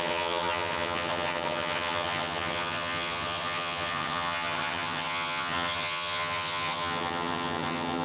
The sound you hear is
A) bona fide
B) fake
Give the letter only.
B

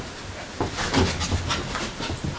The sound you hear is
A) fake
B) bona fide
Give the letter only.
B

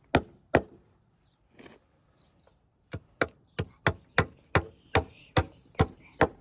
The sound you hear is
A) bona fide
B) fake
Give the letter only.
A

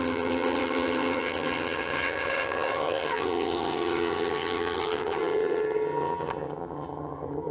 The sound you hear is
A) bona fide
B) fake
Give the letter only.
B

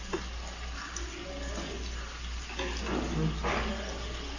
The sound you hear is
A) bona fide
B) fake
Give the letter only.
A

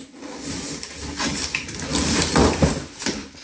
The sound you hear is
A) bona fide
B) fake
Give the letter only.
A